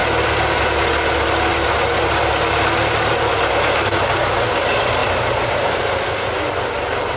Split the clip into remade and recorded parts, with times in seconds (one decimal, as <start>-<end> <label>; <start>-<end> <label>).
0.0-7.2 recorded